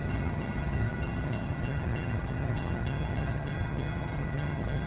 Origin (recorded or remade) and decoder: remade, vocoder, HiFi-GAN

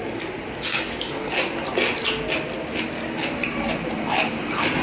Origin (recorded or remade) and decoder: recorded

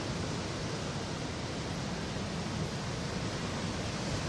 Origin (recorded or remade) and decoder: recorded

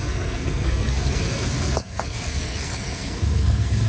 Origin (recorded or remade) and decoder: remade, codec, SNAC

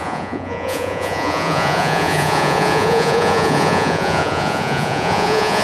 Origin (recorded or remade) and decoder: remade, vocoder, Vocos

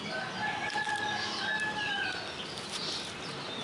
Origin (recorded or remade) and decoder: recorded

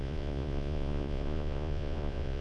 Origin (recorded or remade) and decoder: remade, vocoder, Vocos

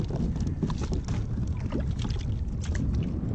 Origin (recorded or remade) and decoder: recorded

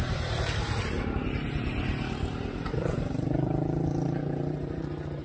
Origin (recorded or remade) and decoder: remade, vocoder, BigVGAN v2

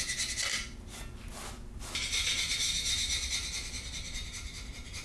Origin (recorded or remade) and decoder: recorded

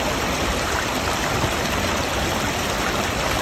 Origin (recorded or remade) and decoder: recorded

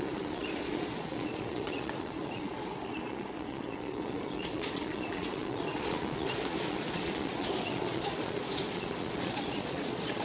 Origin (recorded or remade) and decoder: remade, vocoder, Vocos